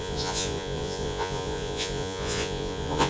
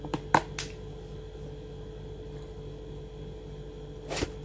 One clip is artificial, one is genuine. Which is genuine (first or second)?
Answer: second